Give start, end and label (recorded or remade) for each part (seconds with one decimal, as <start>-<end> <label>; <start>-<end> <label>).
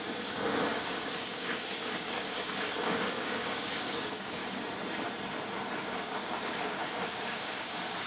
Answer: 0.0-4.4 remade; 4.4-5.8 recorded; 5.8-8.1 remade